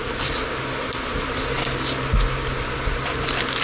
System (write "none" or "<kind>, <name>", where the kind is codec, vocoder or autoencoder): none